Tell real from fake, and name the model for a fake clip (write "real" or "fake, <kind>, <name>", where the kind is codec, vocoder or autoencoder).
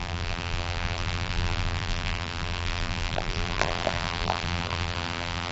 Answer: fake, vocoder, BigVGAN v2